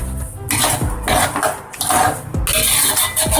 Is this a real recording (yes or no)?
yes